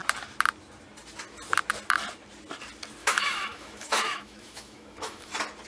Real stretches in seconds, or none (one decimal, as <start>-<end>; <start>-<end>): 0.0-3.0; 5.3-5.7